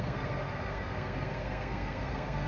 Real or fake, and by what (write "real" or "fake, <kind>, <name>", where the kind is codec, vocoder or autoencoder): fake, codec, SNAC